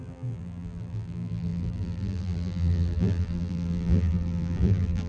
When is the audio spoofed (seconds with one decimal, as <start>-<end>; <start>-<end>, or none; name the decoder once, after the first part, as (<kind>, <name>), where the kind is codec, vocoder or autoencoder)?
0.0-5.1 (vocoder, BigVGAN v2)